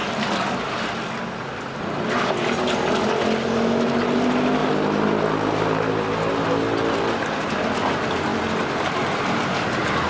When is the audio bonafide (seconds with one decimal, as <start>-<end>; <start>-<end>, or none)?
0.0-10.1